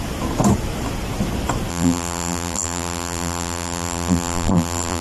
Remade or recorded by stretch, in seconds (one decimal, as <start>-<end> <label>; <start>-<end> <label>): 0.0-1.7 recorded; 1.7-5.0 remade